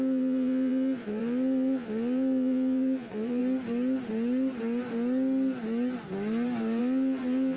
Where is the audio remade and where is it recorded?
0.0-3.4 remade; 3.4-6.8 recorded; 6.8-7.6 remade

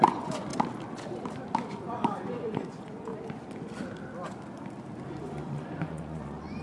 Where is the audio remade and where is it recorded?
0.0-0.5 remade; 0.5-1.7 recorded; 1.7-3.1 remade; 3.1-5.1 recorded; 5.1-6.6 remade

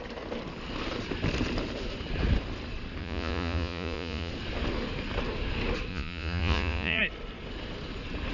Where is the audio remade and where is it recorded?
0.0-3.0 recorded; 3.0-4.3 remade; 4.3-5.9 recorded; 5.9-7.0 remade; 7.0-8.3 recorded

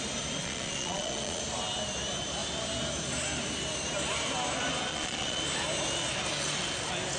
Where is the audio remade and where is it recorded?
0.0-0.4 recorded; 0.4-1.4 remade; 1.4-4.9 recorded; 4.9-5.4 remade; 5.4-7.2 recorded